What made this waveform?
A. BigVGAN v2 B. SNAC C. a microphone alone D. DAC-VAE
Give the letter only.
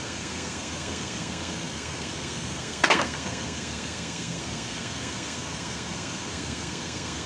B